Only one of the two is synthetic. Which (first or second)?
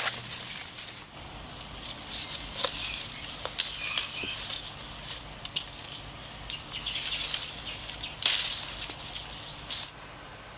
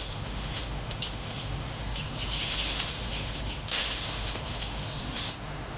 second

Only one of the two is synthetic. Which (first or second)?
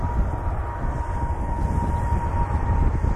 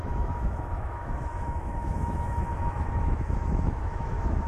second